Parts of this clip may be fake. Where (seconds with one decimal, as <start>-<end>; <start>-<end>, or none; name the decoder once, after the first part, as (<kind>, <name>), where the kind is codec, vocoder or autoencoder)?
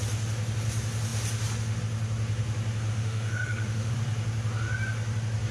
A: 2.9-3.9 (autoencoder, DAC-VAE)